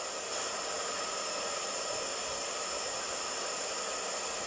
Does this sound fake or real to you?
real